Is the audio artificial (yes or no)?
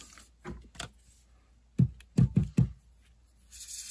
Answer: no